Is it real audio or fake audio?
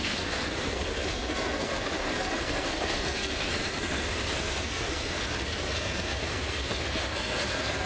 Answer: fake